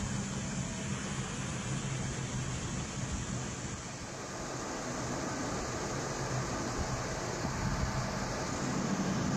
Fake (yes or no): no